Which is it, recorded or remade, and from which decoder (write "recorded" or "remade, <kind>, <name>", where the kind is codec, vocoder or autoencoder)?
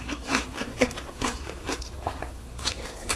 remade, codec, SNAC